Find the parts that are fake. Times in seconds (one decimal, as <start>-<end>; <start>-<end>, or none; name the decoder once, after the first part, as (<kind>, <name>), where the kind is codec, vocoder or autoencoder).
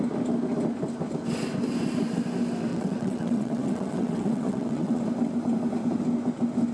2.7-5.0 (vocoder, WaveNeXt)